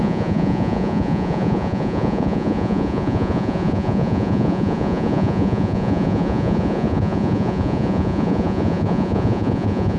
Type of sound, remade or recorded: remade